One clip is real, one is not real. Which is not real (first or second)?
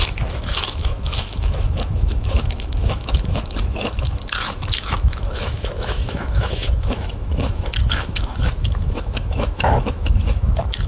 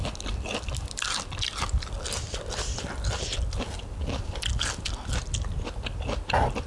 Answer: first